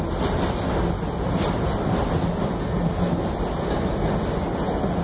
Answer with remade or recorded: recorded